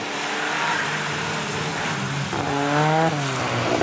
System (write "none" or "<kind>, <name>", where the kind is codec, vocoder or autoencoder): none